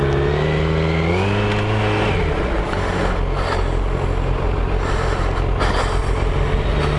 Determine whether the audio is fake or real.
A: real